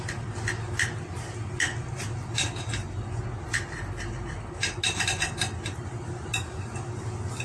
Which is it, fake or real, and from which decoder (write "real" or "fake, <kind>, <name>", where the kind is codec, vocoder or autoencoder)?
real